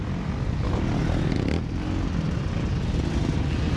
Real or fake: real